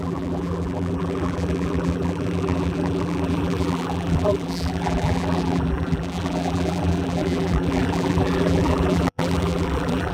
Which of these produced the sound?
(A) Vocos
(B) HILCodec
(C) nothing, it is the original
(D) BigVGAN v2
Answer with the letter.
D